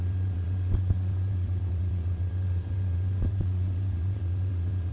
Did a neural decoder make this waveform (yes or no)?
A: yes